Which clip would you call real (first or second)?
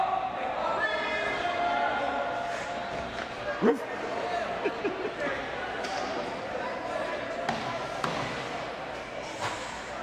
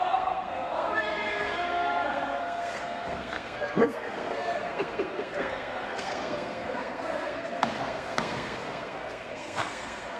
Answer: first